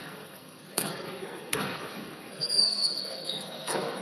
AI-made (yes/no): yes